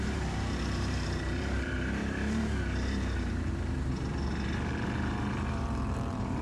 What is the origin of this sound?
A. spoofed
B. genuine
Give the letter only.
A